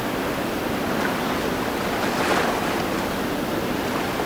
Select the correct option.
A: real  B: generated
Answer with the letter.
A